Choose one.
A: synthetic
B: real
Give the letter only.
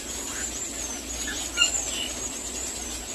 B